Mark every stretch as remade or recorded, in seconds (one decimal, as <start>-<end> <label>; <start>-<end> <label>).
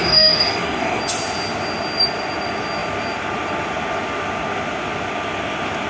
0.0-1.0 remade; 1.0-5.9 recorded